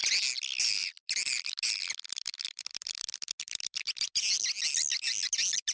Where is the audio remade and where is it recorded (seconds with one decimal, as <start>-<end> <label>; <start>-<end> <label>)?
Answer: 0.0-5.7 recorded